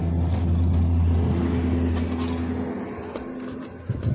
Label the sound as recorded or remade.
recorded